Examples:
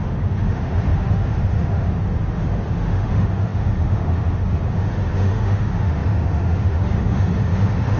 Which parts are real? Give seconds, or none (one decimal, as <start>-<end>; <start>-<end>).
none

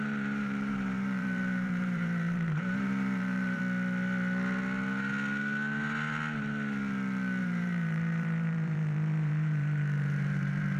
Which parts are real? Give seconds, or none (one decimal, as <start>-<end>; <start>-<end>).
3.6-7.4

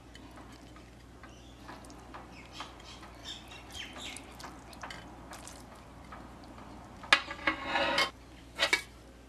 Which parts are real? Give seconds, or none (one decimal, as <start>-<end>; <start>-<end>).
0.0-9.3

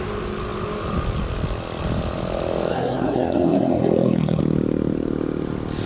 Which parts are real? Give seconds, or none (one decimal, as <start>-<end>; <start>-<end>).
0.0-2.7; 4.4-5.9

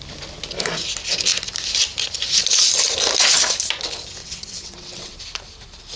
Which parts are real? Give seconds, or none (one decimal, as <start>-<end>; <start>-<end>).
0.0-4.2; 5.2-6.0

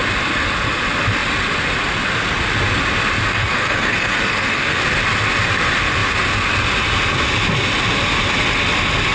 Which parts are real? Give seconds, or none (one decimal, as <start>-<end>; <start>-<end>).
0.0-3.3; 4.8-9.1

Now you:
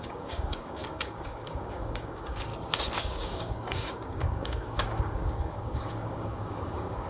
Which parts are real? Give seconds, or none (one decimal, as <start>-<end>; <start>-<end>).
2.5-3.0

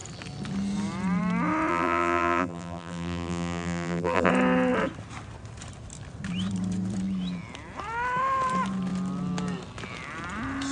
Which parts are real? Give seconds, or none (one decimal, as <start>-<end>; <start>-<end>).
0.0-1.7; 4.3-10.7